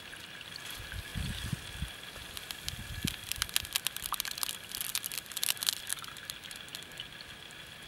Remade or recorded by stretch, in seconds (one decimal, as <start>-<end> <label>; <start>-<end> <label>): 0.0-7.9 recorded